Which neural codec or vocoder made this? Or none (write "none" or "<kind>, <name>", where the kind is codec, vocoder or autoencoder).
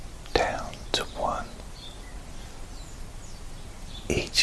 none